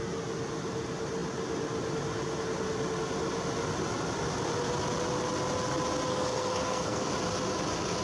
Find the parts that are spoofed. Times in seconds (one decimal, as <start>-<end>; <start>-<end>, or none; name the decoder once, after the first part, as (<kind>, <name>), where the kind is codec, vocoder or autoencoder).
6.1-7.1 (codec, SNAC)